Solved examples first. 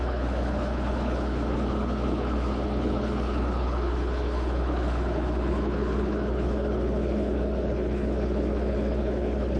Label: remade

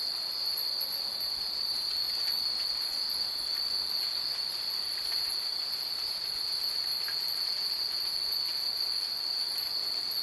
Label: recorded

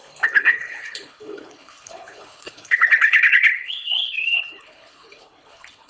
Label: remade